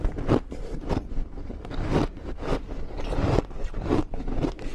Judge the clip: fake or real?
real